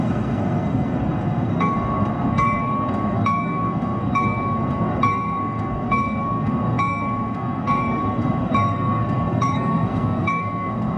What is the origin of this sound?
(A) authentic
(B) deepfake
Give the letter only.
B